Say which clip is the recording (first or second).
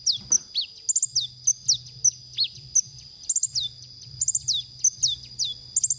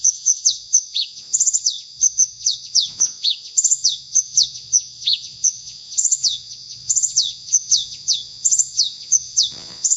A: first